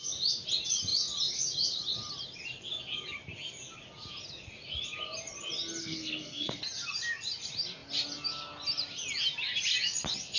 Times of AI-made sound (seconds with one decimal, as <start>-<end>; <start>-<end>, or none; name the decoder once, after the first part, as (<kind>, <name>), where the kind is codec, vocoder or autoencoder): 5.8-6.6 (codec, SNAC)